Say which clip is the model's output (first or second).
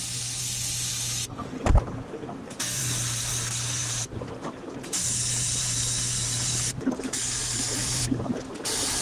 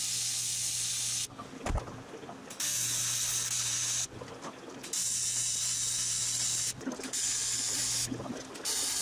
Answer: first